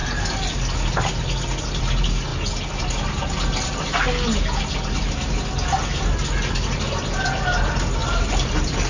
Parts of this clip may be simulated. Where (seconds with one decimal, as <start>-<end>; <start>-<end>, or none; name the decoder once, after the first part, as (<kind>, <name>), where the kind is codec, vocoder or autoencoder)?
none